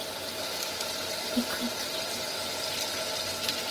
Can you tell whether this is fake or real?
real